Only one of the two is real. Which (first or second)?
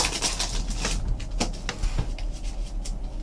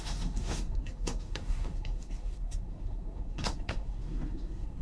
first